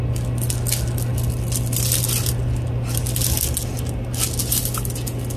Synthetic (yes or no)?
no